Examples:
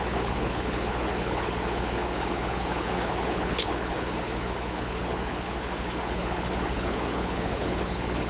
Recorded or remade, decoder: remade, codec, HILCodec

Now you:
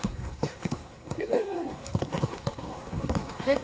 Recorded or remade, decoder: remade, codec, SNAC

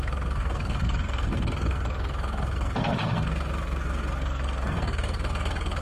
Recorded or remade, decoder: remade, codec, SNAC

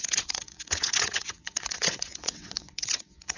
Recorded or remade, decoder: remade, vocoder, WaveNeXt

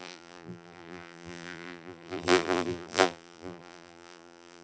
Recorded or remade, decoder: remade, vocoder, BigVGAN v2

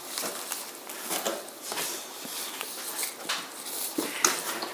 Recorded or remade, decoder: recorded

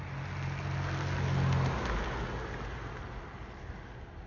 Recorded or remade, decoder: recorded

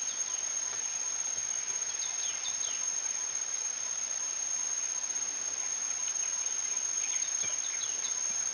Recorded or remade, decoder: recorded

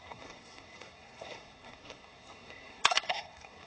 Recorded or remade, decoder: remade, codec, SNAC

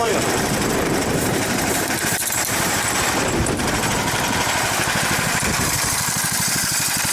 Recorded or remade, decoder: remade, vocoder, BigVGAN v2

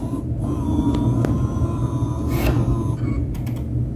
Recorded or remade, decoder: recorded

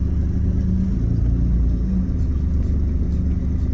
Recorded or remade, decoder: recorded